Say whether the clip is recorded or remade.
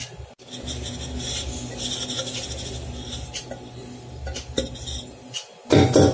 recorded